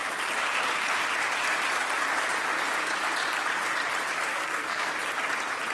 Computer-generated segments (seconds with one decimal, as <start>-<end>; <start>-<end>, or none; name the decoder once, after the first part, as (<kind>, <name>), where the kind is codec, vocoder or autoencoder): 4.3-4.9 (codec, SNAC)